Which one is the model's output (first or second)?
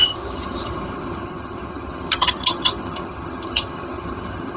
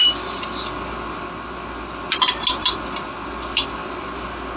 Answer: first